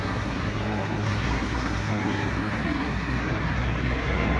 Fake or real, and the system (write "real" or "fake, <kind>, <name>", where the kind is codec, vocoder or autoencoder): fake, codec, SNAC